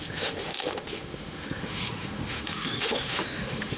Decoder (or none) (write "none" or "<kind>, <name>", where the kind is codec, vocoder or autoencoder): autoencoder, DAC-VAE